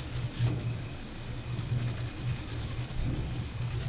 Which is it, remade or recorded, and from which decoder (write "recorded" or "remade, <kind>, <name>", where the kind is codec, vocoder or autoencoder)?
remade, codec, DAC